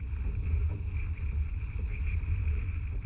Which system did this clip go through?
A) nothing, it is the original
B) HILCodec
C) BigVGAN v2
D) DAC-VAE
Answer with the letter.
A